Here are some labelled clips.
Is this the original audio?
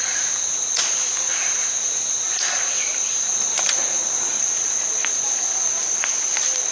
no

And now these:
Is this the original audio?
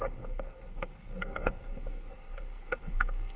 no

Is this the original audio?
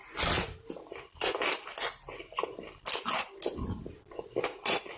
yes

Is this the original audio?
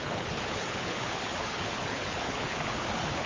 no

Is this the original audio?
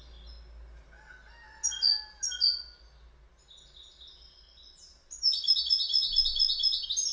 yes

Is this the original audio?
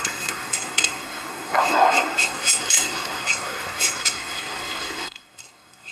no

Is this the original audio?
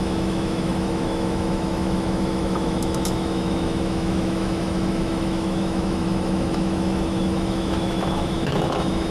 no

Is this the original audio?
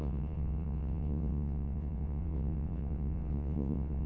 no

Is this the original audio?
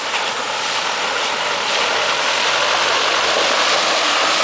yes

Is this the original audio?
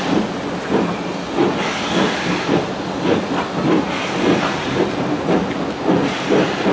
yes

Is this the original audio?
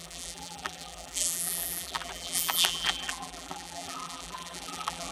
no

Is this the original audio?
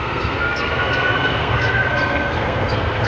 no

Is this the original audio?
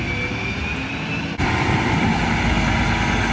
yes